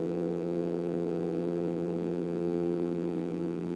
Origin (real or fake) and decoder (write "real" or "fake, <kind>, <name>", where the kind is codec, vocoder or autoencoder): fake, vocoder, BigVGAN v2